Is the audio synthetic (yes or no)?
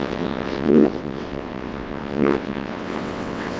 yes